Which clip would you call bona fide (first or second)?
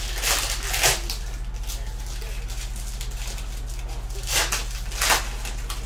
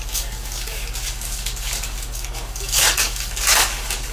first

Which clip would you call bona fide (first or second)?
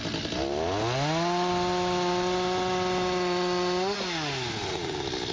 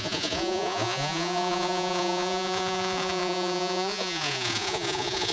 first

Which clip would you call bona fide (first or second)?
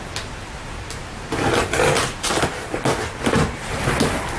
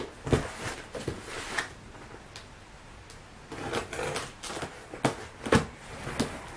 second